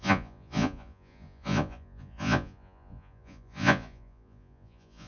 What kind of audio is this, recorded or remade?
remade